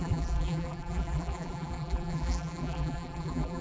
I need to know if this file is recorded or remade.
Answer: remade